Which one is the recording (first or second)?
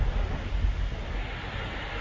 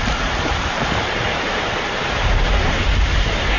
first